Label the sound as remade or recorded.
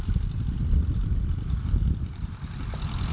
recorded